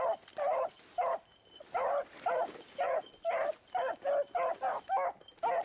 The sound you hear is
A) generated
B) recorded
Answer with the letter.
B